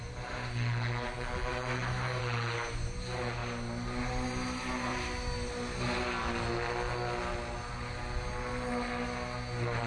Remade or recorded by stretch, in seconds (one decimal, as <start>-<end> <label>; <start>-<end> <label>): 0.0-1.5 recorded; 1.5-2.2 remade; 2.2-9.9 recorded